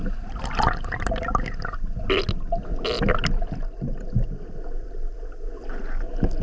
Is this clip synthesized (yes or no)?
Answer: no